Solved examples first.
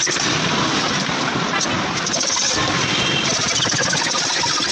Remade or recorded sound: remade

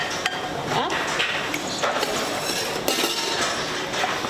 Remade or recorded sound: recorded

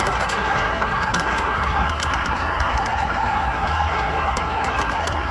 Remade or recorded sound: remade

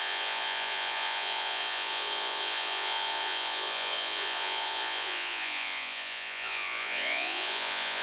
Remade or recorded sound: remade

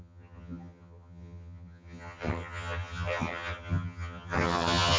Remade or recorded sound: remade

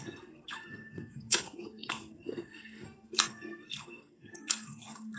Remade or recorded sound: remade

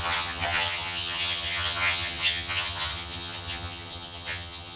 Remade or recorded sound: remade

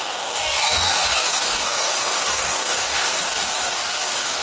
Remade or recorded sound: remade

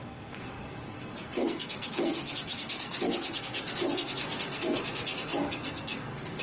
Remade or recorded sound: remade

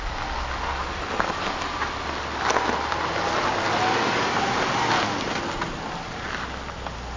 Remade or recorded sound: recorded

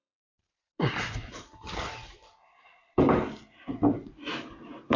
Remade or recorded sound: remade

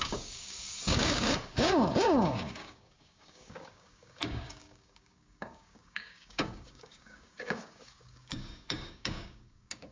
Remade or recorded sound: remade